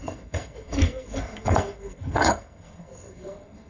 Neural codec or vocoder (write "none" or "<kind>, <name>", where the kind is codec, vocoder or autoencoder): codec, SNAC